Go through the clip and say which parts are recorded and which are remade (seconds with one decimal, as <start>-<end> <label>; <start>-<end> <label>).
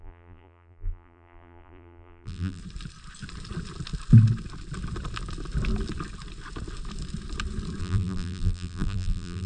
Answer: 0.0-2.6 remade; 2.6-7.8 recorded; 7.8-9.5 remade